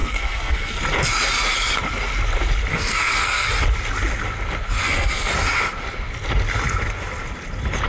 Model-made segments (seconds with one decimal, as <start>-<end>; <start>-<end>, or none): 0.0-0.8; 2.7-3.5; 4.8-5.3